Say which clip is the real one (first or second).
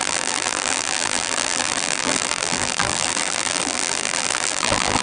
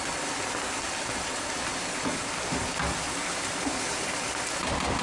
second